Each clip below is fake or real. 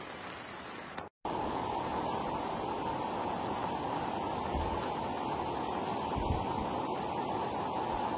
real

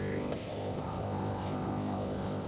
fake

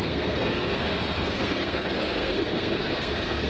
fake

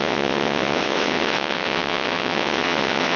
fake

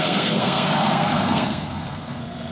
fake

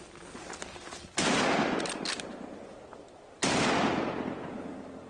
real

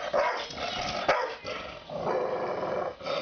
real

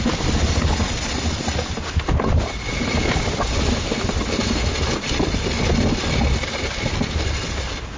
real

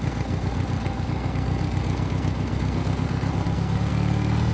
fake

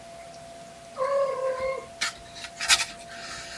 real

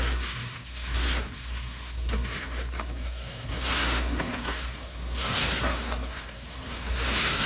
fake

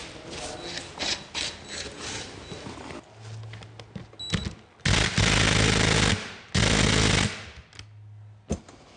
real